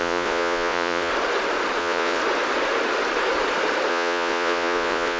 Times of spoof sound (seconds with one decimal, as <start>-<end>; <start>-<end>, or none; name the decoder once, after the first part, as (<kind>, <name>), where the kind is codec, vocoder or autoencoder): 0.0-1.1 (vocoder, Vocos); 1.8-2.2; 3.9-5.2